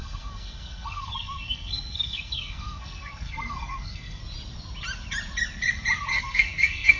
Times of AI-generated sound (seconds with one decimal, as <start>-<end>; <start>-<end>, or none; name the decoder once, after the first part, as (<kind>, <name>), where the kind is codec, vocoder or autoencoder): 0.0-4.2 (codec, SNAC); 6.1-7.0